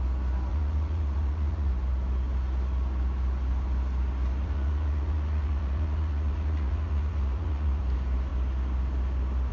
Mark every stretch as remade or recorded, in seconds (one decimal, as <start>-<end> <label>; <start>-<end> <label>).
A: 0.0-0.5 recorded; 0.5-1.7 remade; 1.7-4.4 recorded; 4.4-7.8 remade; 7.8-9.5 recorded